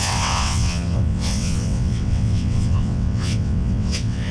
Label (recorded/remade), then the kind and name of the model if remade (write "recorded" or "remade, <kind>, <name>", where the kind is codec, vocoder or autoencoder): remade, vocoder, WaveNeXt